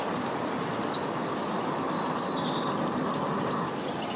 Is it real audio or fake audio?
real